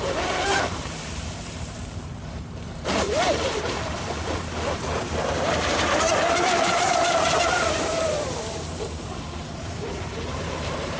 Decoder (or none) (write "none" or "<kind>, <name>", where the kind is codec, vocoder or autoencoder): vocoder, BigVGAN v2